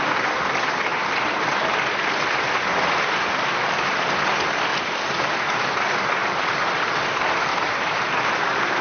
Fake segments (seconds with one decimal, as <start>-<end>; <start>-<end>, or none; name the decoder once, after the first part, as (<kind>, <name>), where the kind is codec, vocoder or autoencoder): 4.7-7.0 (vocoder, BigVGAN v2); 7.5-8.1